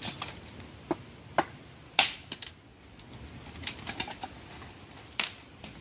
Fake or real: real